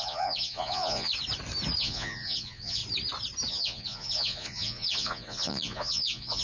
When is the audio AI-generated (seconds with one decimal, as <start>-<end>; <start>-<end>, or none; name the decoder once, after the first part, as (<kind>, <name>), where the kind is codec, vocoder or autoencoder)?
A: 0.0-1.1 (vocoder, Vocos); 1.8-2.8; 3.5-6.4